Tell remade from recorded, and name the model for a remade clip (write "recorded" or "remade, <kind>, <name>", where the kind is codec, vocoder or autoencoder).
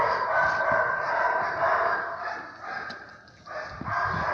recorded